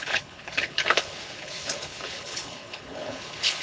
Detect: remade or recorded remade